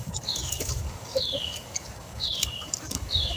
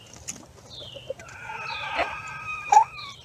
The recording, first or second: second